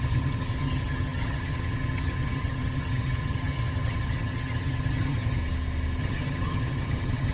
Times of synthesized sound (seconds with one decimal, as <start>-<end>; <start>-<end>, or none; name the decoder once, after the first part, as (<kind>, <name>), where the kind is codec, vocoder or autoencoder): 0.0-5.4 (vocoder, HiFi-GAN); 6.0-7.3